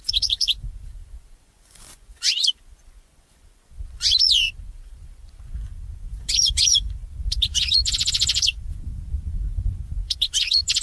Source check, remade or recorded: remade